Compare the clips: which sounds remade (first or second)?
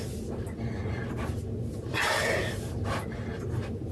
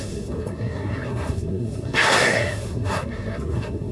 second